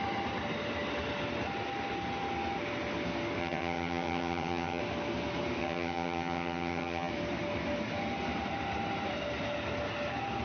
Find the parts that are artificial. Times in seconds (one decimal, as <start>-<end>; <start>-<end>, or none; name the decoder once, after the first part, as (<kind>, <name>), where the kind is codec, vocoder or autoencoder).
3.4-4.8 (vocoder, HiFi-GAN); 5.6-7.1